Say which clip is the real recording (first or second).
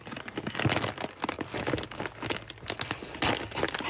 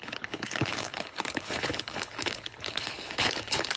first